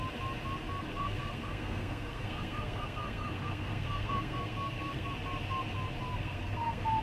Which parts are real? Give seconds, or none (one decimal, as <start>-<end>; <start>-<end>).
0.0-0.9; 5.1-6.1